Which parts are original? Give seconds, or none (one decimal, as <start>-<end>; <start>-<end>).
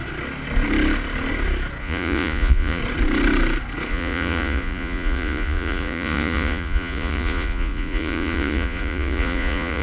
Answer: 0.0-1.8; 2.8-3.9